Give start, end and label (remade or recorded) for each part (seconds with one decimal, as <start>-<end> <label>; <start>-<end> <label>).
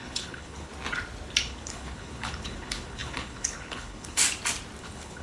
0.0-0.7 remade; 0.7-1.4 recorded; 1.4-4.2 remade; 4.2-4.8 recorded; 4.8-5.2 remade